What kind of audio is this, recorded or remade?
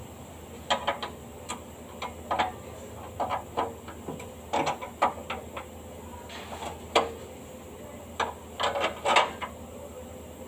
recorded